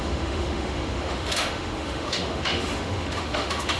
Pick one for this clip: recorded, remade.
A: remade